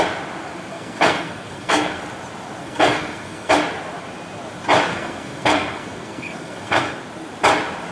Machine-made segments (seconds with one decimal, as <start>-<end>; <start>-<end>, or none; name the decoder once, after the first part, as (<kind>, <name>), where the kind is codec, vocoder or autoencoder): 0.7-2.0 (codec, SNAC); 2.6-3.5; 4.9-7.0